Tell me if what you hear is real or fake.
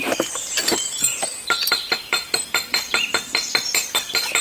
fake